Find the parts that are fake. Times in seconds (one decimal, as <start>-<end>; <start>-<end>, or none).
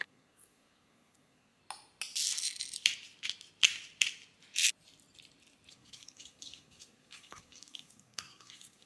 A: 0.0-1.6; 5.7-8.9